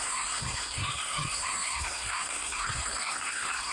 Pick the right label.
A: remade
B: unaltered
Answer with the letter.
A